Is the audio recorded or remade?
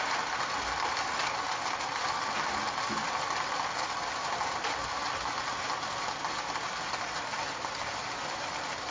recorded